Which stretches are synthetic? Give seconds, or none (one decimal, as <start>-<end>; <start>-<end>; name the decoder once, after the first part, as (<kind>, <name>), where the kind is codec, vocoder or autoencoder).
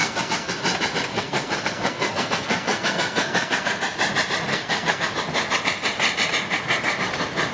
0.0-0.5 (codec, SNAC); 1.1-3.8; 4.5-5.1